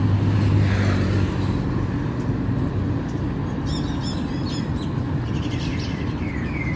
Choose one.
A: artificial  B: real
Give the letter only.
B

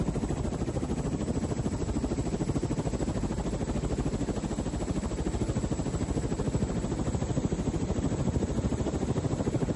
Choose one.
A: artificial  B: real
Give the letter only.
B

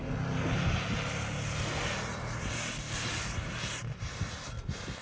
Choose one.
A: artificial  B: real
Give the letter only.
B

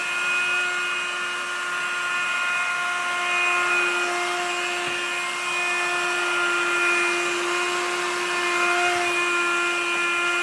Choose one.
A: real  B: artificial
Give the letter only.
A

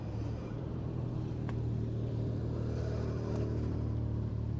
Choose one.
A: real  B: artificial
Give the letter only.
B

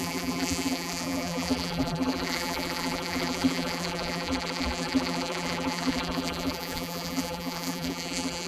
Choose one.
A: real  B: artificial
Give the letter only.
B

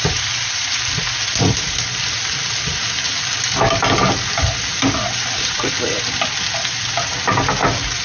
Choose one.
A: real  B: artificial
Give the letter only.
A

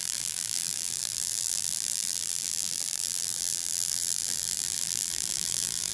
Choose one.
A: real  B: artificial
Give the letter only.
B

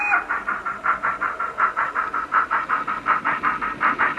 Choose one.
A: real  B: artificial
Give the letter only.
A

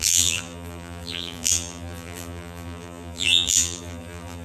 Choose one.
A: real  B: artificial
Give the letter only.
B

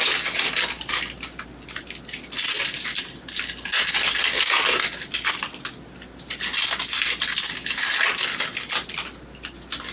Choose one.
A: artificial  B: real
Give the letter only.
B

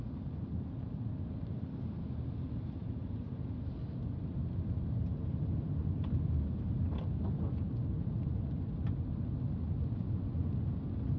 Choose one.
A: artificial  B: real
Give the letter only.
B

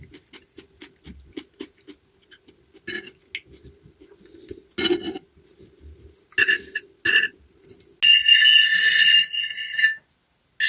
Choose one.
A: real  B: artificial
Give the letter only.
A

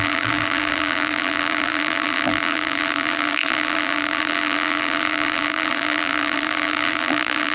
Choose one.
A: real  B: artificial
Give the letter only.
B